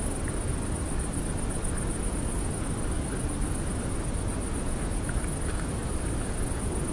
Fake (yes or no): no